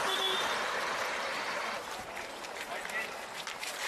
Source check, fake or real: fake